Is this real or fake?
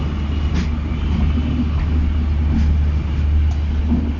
real